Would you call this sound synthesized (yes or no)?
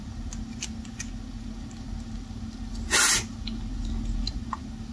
no